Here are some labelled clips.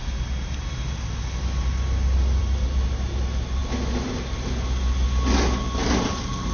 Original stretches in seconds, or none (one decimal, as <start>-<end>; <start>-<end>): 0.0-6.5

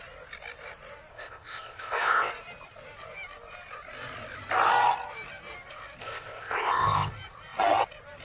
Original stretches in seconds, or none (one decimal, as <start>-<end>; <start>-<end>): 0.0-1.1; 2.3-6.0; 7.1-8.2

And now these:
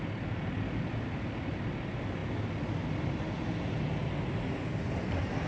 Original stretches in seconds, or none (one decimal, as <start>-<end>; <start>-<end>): 0.0-5.5

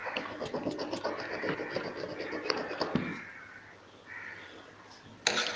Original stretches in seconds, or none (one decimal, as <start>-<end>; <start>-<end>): 0.0-5.6

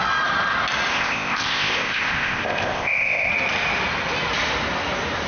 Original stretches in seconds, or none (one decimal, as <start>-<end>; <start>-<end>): 0.0-0.9; 3.3-5.3

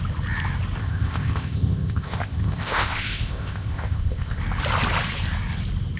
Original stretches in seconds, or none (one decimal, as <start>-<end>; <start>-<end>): 0.0-0.8; 4.4-6.0

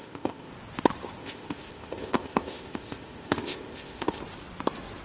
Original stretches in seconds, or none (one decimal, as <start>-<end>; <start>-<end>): 0.5-1.2; 4.2-5.0